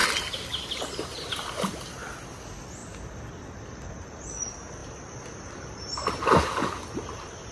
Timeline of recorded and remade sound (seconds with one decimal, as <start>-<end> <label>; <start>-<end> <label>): 0.0-4.8 recorded; 4.8-6.1 remade; 6.1-7.5 recorded